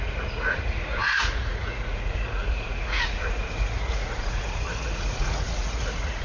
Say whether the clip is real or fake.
fake